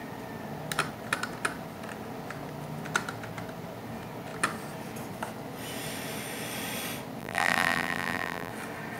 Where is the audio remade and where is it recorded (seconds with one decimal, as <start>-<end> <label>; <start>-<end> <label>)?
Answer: 0.0-7.2 recorded; 7.2-8.5 remade; 8.5-9.0 recorded